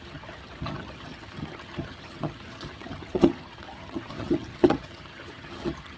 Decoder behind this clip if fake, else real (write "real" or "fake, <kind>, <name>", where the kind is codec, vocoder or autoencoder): fake, vocoder, HiFi-GAN